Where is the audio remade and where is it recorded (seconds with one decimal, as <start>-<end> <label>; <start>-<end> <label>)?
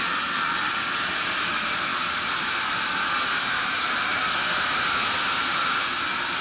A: 0.0-1.9 remade; 1.9-3.4 recorded; 3.4-4.2 remade; 4.2-5.4 recorded; 5.4-6.4 remade